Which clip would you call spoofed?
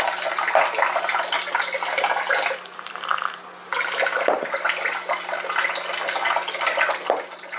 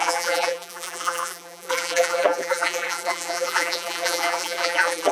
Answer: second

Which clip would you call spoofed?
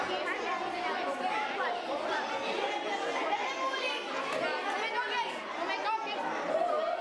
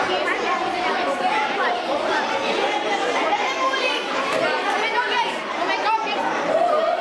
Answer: second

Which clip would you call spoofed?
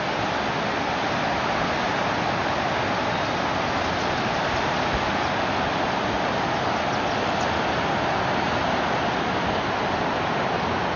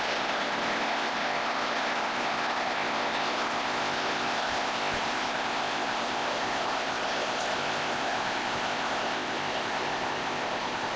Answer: second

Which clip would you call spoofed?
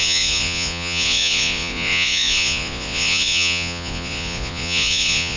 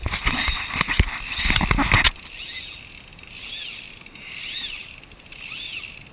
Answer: first